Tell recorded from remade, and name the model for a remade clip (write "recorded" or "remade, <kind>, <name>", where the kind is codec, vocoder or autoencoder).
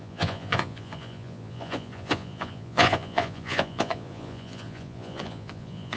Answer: remade, vocoder, Vocos